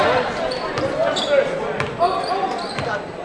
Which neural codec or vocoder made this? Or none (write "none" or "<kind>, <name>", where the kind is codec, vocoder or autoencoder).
none